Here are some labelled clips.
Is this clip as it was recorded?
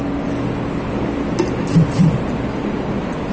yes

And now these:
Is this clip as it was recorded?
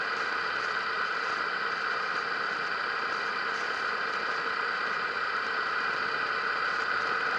yes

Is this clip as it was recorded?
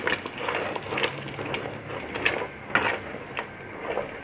yes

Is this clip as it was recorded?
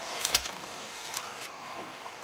no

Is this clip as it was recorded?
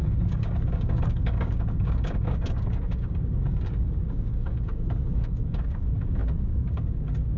no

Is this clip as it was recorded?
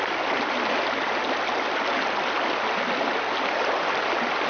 yes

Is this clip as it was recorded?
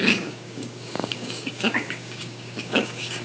no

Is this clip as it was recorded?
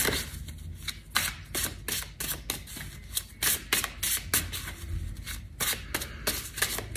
yes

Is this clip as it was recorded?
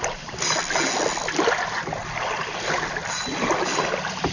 yes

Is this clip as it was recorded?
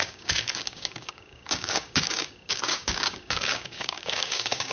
no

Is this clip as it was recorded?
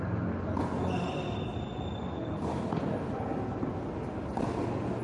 yes